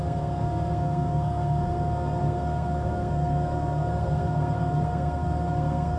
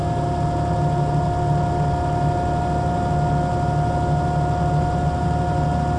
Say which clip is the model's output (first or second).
first